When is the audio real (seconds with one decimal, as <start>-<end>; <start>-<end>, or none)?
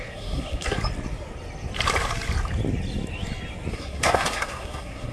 0.8-3.7